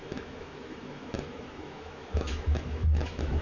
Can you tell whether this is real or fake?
fake